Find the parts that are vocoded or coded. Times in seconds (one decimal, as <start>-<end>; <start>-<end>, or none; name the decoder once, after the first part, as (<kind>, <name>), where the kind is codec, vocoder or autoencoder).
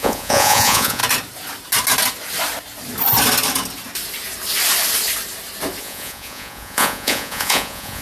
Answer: 0.0-1.0 (vocoder, Vocos); 5.8-8.0